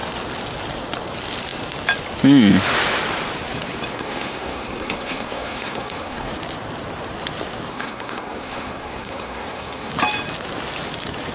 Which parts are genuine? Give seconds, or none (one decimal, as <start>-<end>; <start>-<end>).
0.0-3.9; 6.3-7.7; 9.9-11.3